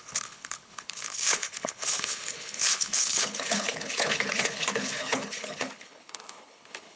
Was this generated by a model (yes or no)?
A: yes